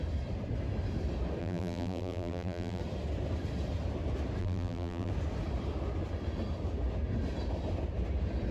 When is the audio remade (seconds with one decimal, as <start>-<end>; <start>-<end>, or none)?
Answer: 1.4-2.8; 4.4-5.1